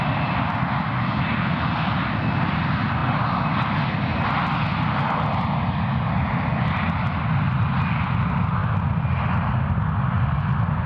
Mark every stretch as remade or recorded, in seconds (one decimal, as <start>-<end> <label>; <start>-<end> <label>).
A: 0.0-10.9 recorded

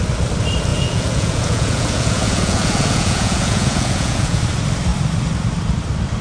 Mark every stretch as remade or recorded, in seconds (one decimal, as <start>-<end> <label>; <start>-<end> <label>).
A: 0.0-0.7 recorded; 0.7-4.4 remade; 4.4-6.2 recorded

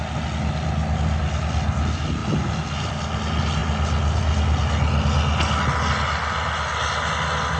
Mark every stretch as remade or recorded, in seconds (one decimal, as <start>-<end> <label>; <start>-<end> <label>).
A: 0.0-2.2 recorded; 2.2-2.9 remade; 2.9-7.6 recorded

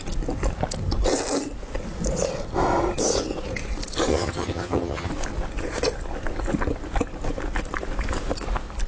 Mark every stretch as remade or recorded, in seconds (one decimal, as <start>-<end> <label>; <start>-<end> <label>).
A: 0.0-4.1 recorded; 4.1-5.1 remade; 5.1-8.9 recorded

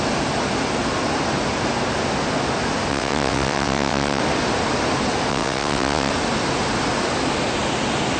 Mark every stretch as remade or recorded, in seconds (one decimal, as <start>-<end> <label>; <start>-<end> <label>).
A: 0.0-2.9 recorded; 2.9-4.2 remade; 4.2-5.3 recorded; 5.3-6.1 remade; 6.1-8.2 recorded

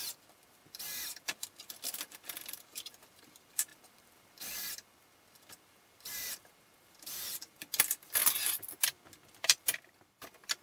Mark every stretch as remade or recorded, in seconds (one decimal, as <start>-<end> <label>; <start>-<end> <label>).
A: 0.0-8.2 remade; 8.2-9.3 recorded; 9.3-10.6 remade